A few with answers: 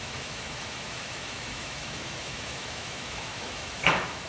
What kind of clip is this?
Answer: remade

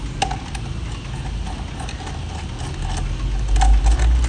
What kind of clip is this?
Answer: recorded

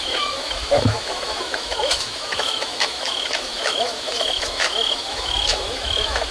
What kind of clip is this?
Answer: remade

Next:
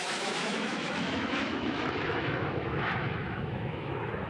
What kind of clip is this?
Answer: remade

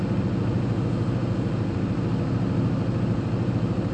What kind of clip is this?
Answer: recorded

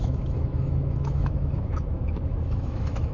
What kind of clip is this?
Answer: remade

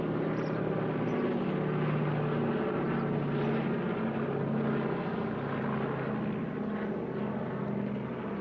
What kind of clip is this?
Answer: recorded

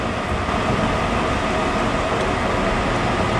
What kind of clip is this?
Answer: recorded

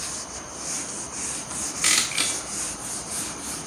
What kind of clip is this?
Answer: recorded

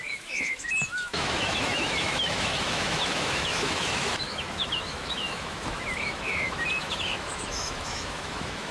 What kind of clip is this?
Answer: remade